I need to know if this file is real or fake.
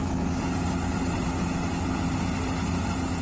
real